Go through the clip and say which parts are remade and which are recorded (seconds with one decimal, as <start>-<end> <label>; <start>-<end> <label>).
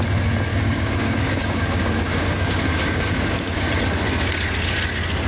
0.0-0.5 recorded; 0.5-3.7 remade; 3.7-5.3 recorded